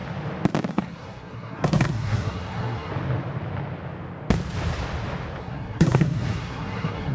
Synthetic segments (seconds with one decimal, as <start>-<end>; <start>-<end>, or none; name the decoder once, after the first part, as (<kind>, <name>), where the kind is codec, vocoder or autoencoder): 0.7-2.9 (codec, SNAC); 5.4-7.1